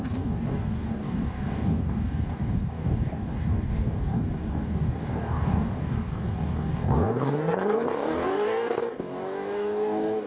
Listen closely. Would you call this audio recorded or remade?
remade